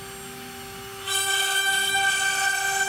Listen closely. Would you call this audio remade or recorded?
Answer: recorded